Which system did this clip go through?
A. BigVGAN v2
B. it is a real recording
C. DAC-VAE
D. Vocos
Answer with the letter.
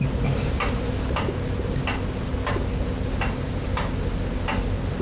B